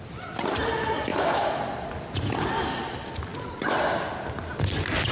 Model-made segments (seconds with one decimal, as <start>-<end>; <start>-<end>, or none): 1.1-1.6

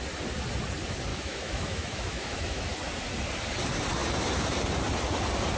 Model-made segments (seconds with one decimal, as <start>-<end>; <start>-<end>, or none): 1.1-2.6

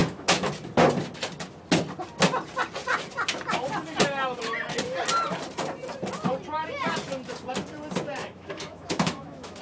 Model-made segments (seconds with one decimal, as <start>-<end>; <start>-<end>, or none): 0.0-0.5; 8.2-9.6

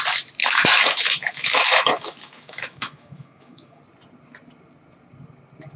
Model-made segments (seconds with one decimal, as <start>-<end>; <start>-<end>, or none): 0.4-3.8

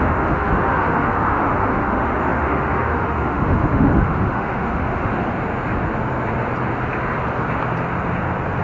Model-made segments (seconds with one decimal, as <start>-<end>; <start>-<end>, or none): 0.0-5.2

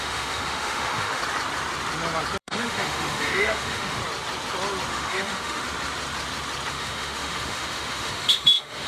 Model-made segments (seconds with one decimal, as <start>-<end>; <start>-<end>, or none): 0.0-1.2; 2.4-4.0; 4.9-5.6; 6.7-8.9

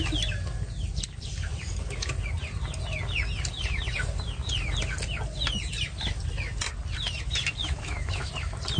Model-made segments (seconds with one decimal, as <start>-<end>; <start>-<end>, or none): 7.6-8.3